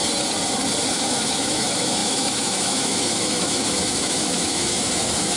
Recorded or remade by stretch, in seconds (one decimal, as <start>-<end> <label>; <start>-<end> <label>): 0.0-0.9 recorded; 0.9-5.4 remade